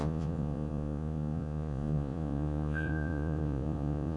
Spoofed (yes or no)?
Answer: yes